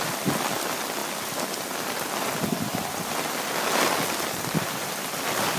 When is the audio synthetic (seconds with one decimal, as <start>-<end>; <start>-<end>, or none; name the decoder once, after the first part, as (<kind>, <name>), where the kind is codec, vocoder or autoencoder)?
none